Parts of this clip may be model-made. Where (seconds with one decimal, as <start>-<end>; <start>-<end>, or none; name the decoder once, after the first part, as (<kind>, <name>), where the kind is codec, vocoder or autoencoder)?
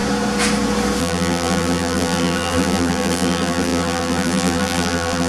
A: 1.0-5.3 (vocoder, BigVGAN v2)